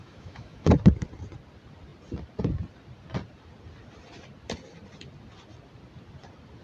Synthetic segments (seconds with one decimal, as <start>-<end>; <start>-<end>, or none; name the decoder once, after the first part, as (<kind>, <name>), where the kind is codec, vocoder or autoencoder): 0.0-0.7 (autoencoder, DAC-VAE)